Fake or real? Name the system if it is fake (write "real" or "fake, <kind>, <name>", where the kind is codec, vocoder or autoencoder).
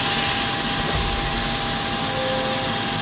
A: real